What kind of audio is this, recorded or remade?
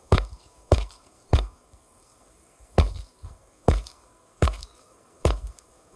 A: remade